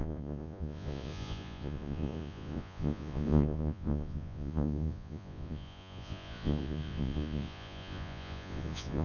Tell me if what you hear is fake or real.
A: fake